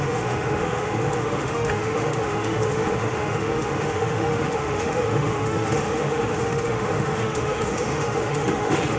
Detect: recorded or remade remade